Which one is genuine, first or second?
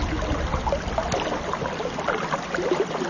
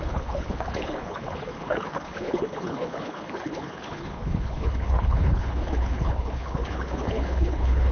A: first